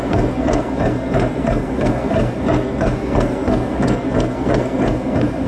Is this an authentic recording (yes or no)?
no